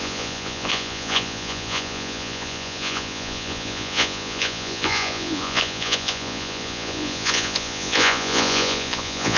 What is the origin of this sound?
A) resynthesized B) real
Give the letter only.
A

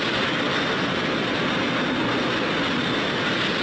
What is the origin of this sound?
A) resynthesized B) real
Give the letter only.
B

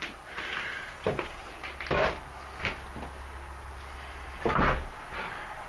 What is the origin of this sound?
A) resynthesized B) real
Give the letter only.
B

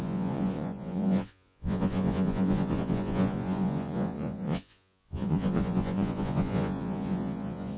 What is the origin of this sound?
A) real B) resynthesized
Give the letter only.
B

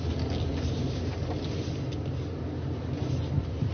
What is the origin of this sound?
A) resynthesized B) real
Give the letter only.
B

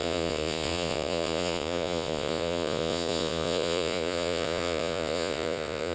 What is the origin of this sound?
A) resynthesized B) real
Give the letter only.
A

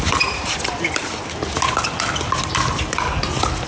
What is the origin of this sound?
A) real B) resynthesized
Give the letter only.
A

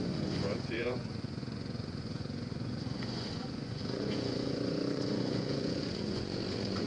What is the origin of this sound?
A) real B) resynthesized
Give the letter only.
B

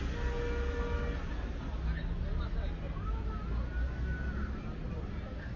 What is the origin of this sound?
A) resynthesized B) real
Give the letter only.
B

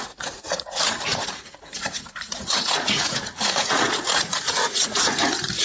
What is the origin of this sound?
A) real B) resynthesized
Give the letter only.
B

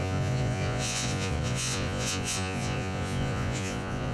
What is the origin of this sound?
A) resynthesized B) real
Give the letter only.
A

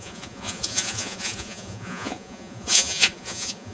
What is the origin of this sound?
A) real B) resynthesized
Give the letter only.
B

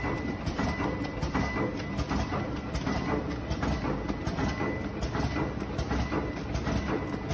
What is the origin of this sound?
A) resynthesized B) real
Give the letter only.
B